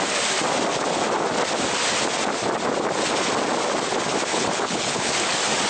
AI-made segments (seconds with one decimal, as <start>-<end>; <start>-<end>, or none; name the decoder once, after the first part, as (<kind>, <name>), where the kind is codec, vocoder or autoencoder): 4.3-5.1 (codec, HILCodec)